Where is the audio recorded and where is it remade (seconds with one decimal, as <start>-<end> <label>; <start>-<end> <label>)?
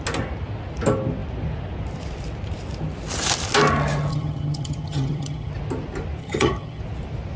0.0-4.1 recorded; 4.1-5.5 remade; 5.5-6.2 recorded; 6.2-6.8 remade; 6.8-7.4 recorded